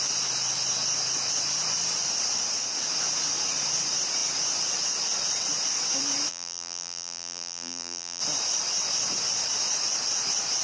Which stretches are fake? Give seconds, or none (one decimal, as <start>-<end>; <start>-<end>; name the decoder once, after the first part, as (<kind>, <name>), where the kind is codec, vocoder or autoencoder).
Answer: 6.3-8.2 (vocoder, BigVGAN v2)